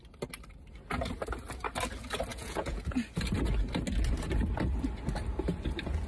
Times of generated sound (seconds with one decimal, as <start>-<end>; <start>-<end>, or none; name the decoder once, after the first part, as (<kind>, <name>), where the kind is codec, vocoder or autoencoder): 2.3-2.8 (vocoder, Vocos)